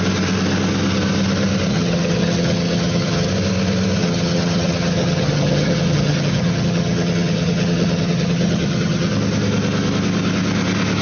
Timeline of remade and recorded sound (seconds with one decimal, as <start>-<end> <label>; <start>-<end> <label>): 0.0-1.7 recorded; 1.7-3.3 remade; 3.3-4.0 recorded; 4.0-9.1 remade; 9.1-11.0 recorded